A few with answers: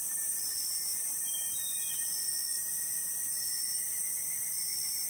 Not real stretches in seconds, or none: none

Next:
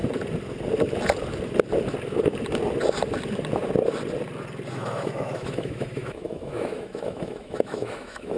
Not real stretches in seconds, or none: 4.7-8.4 (autoencoder, DAC-VAE)

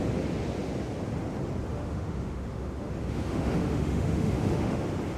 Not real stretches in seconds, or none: 1.7-4.8 (autoencoder, DAC-VAE)

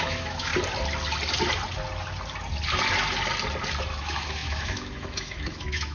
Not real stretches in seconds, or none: 0.0-0.5 (autoencoder, DAC-VAE); 4.0-5.9

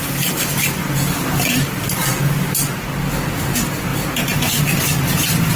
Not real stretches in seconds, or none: none

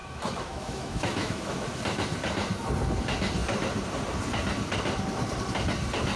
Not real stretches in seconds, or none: 0.0-1.8 (autoencoder, DAC-VAE)

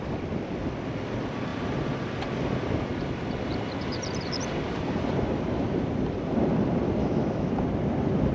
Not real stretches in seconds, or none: 7.0-7.5 (autoencoder, DAC-VAE)